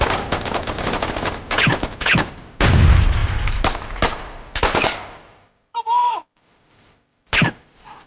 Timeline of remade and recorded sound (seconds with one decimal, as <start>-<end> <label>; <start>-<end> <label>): 0.0-3.2 recorded; 3.2-8.1 remade